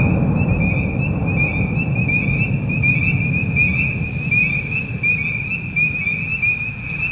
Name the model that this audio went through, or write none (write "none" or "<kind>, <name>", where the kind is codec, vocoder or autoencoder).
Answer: none